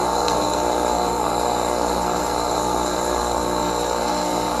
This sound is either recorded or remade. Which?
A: remade